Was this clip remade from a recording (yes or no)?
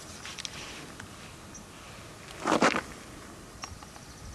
no